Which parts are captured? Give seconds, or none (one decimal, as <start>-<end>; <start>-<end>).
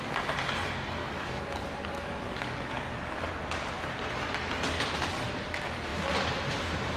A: 0.0-1.0; 3.3-7.0